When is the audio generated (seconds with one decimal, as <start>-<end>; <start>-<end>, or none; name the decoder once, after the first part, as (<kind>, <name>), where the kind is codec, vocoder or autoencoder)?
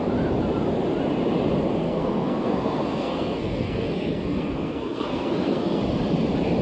1.8-5.8 (codec, SNAC)